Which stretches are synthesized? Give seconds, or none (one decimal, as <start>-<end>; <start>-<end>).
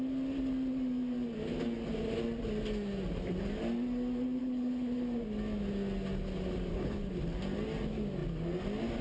4.4-5.0; 6.7-7.2